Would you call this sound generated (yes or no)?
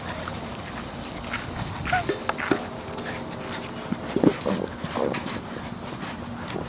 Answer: no